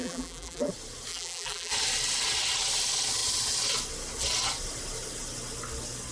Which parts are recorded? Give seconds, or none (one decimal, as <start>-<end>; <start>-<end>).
0.7-1.1; 1.7-6.1